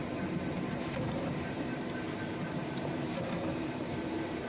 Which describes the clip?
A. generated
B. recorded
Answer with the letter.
A